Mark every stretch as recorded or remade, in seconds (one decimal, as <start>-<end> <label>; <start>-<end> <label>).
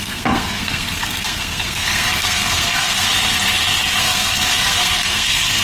0.0-3.1 remade; 3.1-4.0 recorded; 4.0-5.6 remade